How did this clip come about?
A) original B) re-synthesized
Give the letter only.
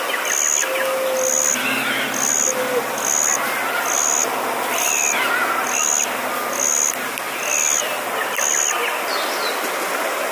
A